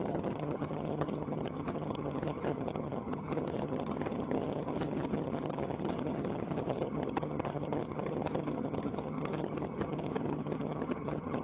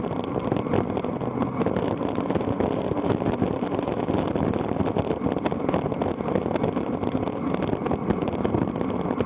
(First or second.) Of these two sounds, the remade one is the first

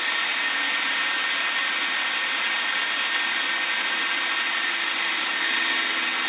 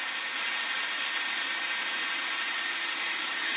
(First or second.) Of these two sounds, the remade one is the second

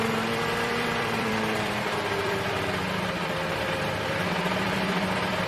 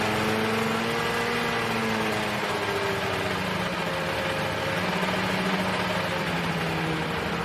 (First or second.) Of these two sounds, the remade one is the first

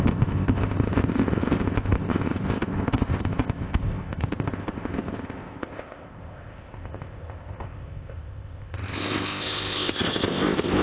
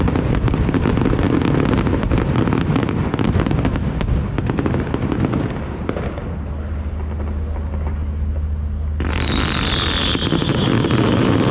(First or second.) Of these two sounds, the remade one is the first